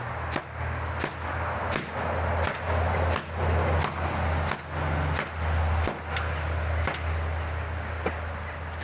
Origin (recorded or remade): recorded